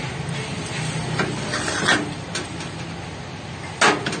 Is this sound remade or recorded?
recorded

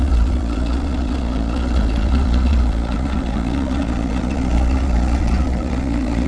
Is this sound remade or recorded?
remade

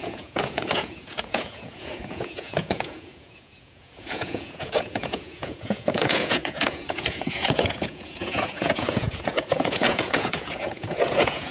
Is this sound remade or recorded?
remade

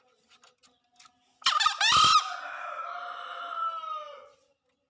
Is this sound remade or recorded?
recorded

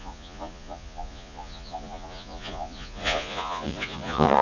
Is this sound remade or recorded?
remade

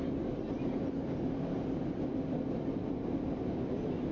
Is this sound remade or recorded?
recorded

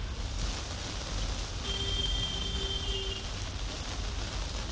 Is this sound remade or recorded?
recorded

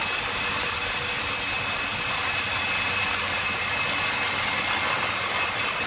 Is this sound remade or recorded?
recorded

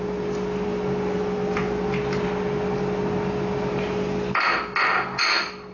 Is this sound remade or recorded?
recorded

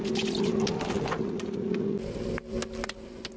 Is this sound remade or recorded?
recorded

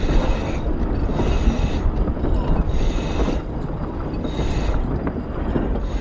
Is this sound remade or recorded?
recorded